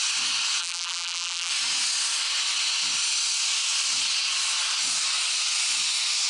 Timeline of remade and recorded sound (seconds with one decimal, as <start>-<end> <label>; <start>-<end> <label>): 0.0-0.6 recorded; 0.6-1.5 remade; 1.5-6.3 recorded